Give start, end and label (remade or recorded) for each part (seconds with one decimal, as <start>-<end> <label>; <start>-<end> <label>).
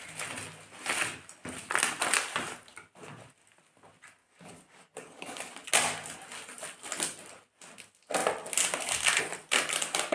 0.0-4.2 recorded; 4.2-5.5 remade; 5.5-10.1 recorded